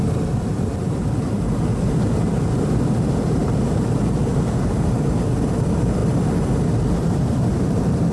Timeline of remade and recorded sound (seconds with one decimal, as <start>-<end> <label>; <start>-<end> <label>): 0.0-6.0 remade; 6.0-6.9 recorded; 6.9-8.1 remade